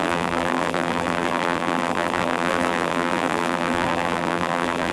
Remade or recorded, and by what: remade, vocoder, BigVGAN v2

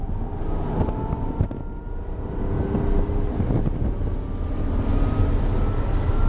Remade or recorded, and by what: recorded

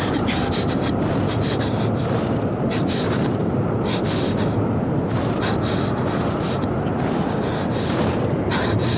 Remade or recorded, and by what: recorded